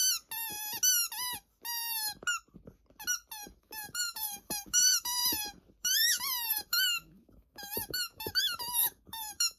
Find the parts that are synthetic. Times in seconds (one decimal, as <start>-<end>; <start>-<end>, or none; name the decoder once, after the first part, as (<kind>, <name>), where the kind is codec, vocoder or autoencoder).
3.6-5.2 (autoencoder, DAC-VAE); 5.8-9.6